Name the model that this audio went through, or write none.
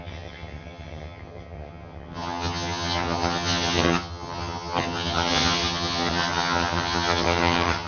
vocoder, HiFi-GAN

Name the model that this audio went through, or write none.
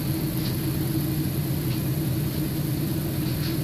none